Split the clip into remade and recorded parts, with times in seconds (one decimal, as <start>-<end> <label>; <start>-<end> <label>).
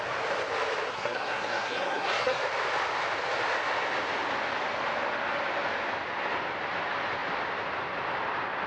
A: 0.0-0.9 recorded; 0.9-2.4 remade; 2.4-8.7 recorded